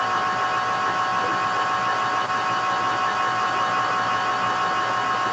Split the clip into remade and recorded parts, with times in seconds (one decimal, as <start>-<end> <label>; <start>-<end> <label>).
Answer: 0.0-5.3 recorded